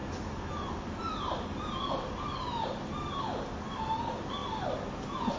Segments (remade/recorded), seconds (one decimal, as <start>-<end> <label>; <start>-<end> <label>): 0.0-5.4 recorded